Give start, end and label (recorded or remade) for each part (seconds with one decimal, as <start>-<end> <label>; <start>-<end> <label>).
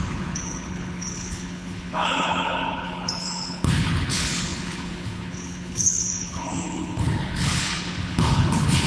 0.0-8.9 remade